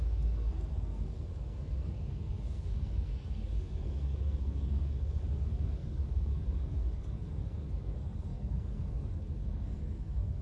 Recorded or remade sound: remade